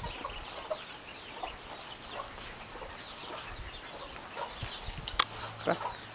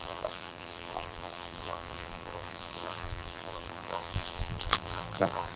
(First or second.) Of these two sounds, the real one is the first